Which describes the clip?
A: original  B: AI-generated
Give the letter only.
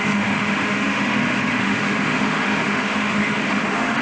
B